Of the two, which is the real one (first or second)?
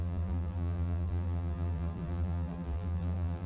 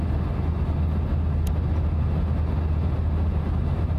second